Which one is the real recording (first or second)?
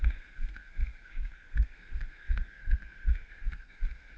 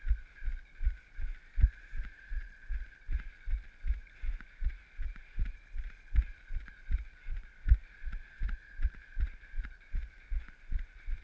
second